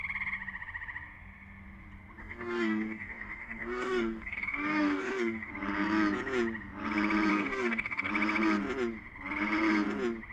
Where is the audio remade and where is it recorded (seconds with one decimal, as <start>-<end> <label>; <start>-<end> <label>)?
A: 0.0-2.2 recorded; 2.2-5.5 remade; 5.5-7.3 recorded; 7.3-8.1 remade; 8.1-10.3 recorded